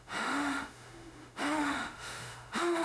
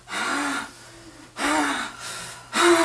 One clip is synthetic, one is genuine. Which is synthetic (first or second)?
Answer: first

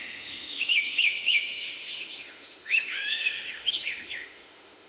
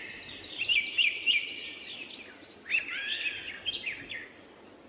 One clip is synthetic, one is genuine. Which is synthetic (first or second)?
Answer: first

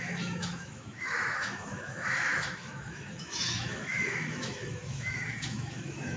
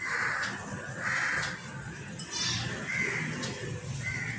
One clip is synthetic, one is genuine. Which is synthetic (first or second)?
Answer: first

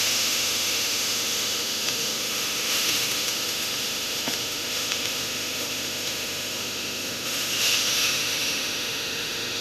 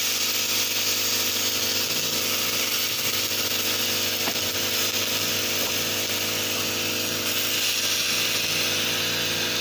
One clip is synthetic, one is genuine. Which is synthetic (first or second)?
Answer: first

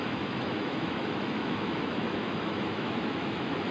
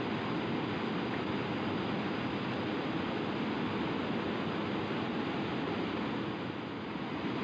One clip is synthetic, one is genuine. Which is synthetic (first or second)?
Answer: first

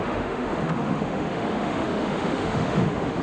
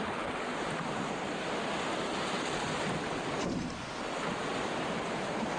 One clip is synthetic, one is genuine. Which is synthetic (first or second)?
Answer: first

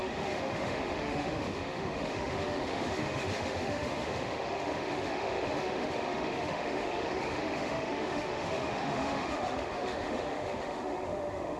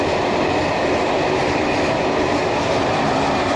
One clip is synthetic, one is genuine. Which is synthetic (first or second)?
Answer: first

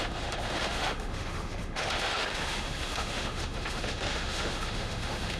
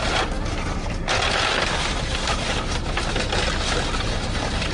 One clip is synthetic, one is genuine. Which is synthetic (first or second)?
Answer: first